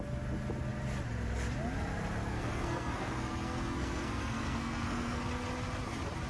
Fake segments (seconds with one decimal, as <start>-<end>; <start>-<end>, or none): 2.3-5.2